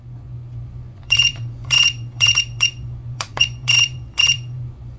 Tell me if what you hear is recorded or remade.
remade